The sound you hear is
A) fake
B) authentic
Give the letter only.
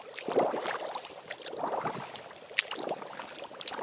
B